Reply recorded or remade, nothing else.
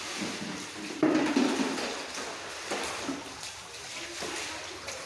recorded